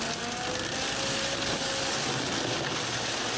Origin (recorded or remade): recorded